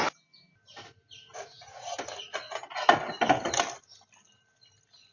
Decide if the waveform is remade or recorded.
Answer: recorded